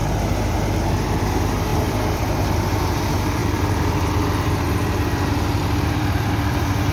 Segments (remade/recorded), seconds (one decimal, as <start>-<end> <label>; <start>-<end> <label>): 0.0-1.2 recorded; 1.2-6.9 remade